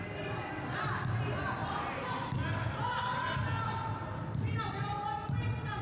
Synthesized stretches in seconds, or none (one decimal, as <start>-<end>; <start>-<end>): none